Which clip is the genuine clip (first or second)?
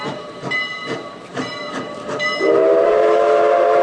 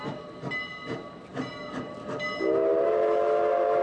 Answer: second